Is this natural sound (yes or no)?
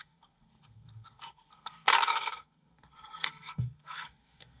no